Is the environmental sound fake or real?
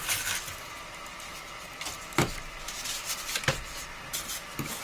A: real